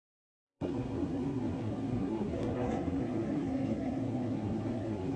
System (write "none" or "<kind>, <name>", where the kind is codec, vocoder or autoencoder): codec, SNAC